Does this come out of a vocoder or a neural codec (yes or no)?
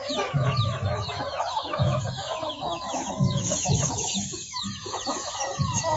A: yes